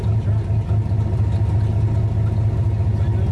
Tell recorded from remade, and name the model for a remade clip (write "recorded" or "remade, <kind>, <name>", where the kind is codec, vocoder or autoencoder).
recorded